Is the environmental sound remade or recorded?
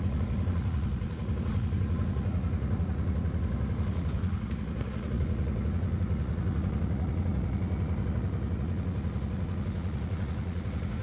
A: remade